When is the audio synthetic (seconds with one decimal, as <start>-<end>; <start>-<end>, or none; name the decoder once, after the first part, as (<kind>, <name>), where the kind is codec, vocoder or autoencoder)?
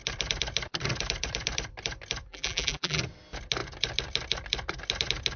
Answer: 2.3-3.0 (vocoder, BigVGAN v2)